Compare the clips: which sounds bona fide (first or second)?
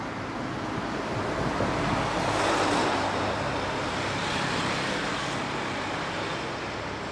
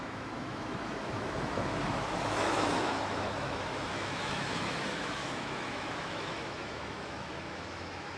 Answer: first